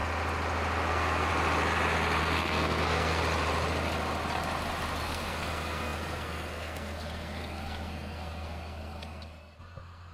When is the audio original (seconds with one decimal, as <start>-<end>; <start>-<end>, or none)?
0.0-0.9; 1.3-2.2; 3.2-5.0